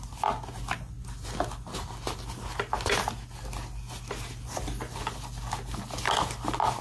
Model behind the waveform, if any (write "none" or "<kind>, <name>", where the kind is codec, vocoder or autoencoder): none